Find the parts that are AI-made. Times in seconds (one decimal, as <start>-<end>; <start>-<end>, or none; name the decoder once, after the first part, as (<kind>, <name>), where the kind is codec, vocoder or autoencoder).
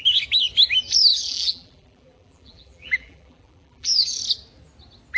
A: 1.1-4.2 (vocoder, BigVGAN v2)